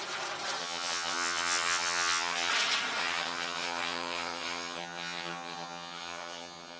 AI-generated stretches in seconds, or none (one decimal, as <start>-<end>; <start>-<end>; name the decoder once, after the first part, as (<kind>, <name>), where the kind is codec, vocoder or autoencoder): 0.6-2.5 (vocoder, HiFi-GAN); 3.0-6.8